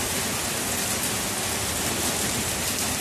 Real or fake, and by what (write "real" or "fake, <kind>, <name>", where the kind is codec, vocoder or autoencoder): real